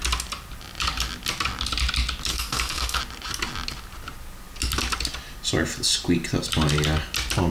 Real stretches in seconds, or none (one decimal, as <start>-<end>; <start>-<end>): 0.0-2.3; 3.0-7.5